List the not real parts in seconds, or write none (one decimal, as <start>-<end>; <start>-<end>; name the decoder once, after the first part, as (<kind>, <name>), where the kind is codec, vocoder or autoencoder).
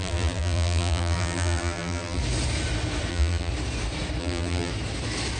0.0-2.2 (vocoder, BigVGAN v2); 3.1-3.5; 4.2-4.7